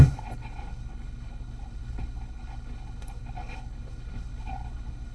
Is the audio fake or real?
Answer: fake